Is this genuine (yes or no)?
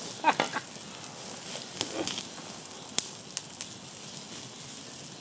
yes